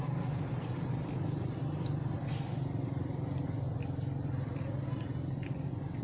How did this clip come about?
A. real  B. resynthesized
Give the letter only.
A